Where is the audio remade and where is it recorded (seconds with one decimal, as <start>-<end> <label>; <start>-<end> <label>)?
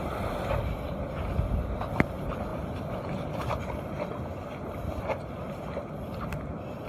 0.0-2.5 recorded; 2.5-3.9 remade; 3.9-6.9 recorded